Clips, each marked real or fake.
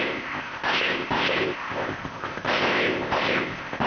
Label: fake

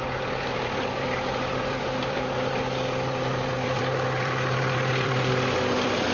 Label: fake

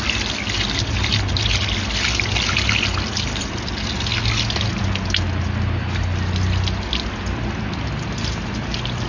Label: real